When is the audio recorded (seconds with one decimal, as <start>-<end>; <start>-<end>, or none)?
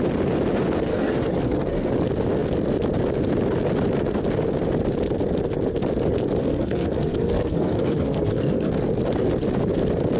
0.0-0.9; 1.9-6.4; 8.7-10.2